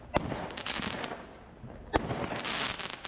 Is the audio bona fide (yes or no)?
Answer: yes